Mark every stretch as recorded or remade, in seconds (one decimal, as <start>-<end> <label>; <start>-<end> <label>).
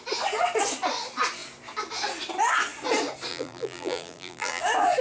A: 0.0-3.3 recorded; 3.3-4.6 remade; 4.6-5.0 recorded